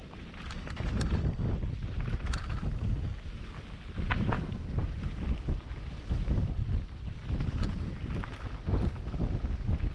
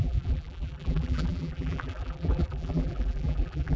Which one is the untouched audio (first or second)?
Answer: first